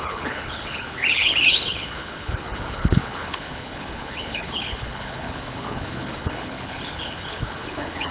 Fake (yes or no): yes